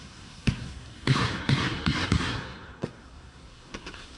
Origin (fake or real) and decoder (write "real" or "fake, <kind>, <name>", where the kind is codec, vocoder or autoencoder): fake, codec, SNAC